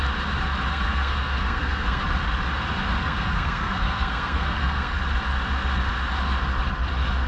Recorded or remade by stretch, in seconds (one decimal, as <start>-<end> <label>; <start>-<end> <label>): 0.0-0.7 recorded; 0.7-2.0 remade; 2.0-3.0 recorded; 3.0-5.0 remade; 5.0-7.3 recorded